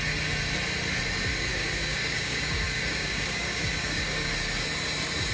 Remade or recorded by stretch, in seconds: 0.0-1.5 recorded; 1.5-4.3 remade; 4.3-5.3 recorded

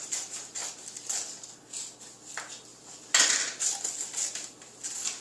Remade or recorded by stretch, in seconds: 0.0-5.2 recorded

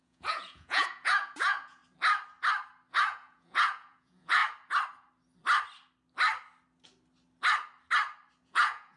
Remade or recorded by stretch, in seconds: 0.0-1.8 remade; 1.8-2.9 recorded; 2.9-4.4 remade; 4.4-8.4 recorded; 8.4-9.0 remade